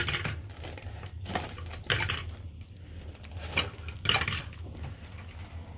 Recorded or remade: recorded